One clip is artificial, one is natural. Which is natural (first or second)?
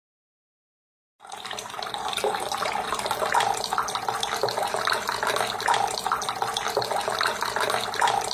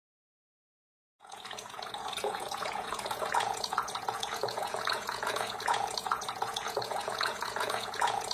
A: first